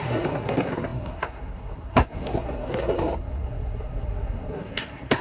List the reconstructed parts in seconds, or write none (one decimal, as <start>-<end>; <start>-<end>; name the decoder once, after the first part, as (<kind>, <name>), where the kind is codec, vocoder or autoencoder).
0.0-5.2 (codec, SNAC)